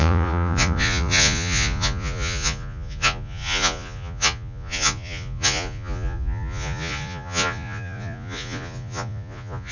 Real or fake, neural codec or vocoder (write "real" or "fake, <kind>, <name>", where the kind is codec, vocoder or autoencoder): fake, vocoder, Vocos